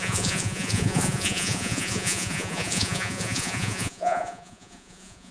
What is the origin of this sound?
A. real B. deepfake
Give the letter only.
B